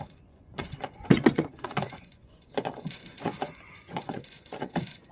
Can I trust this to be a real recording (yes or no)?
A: no